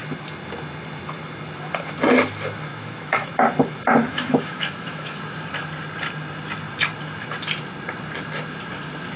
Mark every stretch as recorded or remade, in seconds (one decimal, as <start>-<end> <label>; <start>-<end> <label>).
0.0-2.7 recorded; 2.7-3.3 remade; 3.3-4.0 recorded; 4.0-5.2 remade; 5.2-9.2 recorded